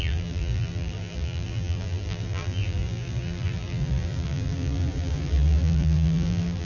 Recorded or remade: remade